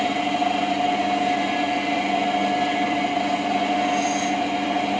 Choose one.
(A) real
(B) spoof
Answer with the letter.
A